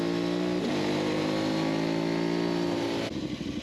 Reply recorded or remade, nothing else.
recorded